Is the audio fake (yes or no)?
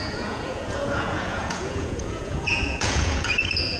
yes